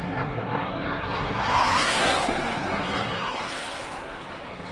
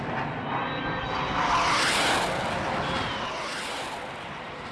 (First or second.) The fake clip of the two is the first